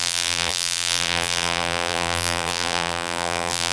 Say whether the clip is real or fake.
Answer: fake